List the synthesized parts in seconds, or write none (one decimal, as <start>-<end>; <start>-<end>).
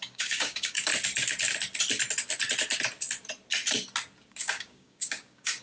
0.0-0.9; 4.3-5.6